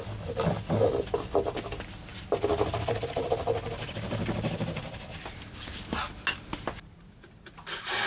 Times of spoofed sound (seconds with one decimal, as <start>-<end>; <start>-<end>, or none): none